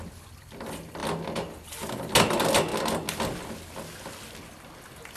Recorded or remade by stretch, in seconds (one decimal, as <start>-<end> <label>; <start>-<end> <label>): 0.0-5.2 recorded